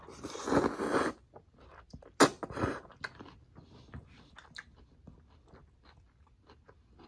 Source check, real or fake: real